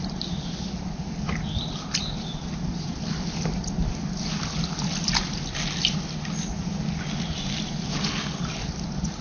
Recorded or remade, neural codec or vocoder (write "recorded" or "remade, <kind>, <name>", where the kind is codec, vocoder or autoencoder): recorded